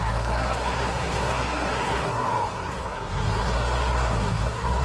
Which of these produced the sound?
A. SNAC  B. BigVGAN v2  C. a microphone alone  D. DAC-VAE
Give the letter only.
A